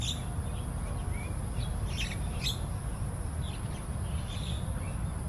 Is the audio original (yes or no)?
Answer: yes